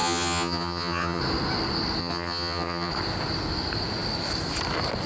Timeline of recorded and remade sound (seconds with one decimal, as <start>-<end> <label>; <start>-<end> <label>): 0.0-1.2 remade; 1.2-2.0 recorded; 2.0-2.9 remade; 2.9-5.1 recorded